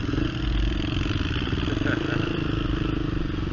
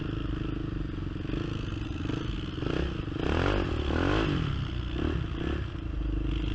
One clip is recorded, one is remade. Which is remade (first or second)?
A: first